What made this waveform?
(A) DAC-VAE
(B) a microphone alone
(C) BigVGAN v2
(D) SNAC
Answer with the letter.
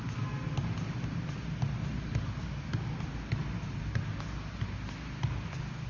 B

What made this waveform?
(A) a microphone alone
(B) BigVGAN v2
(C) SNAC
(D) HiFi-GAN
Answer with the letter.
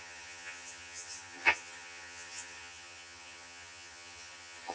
D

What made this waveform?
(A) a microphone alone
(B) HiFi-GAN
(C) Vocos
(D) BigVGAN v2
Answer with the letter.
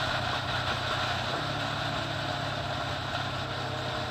A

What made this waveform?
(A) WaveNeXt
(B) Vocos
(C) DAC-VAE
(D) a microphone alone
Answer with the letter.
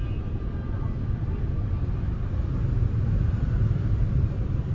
D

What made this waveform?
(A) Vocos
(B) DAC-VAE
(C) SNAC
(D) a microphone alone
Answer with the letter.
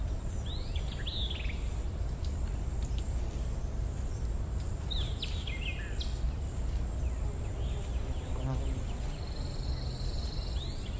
D